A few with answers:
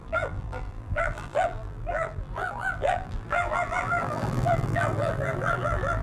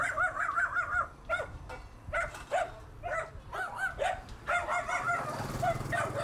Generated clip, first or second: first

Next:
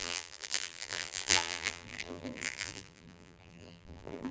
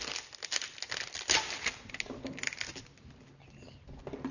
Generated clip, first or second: first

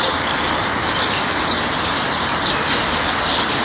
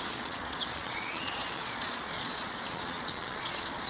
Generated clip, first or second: second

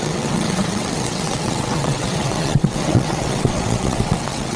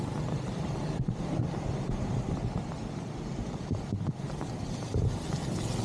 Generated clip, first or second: first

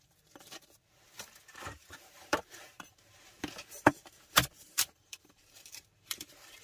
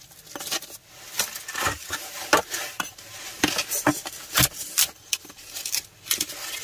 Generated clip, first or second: first